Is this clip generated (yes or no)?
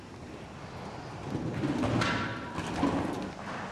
no